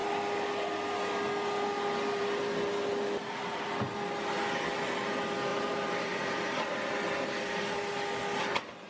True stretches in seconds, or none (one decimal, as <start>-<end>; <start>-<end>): 0.0-5.5; 6.4-8.9